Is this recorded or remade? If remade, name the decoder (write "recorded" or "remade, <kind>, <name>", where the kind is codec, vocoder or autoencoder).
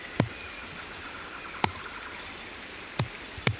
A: recorded